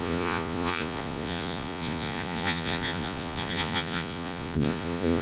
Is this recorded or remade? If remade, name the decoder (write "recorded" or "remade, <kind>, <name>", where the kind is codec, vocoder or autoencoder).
remade, vocoder, Vocos